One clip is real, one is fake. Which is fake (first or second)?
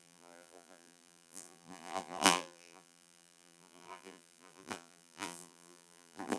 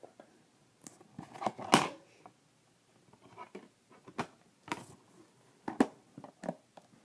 first